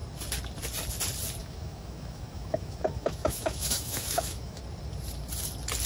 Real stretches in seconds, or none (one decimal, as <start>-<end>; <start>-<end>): 0.0-1.4; 4.6-5.9